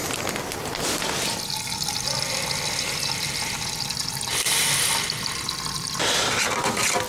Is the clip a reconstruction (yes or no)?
no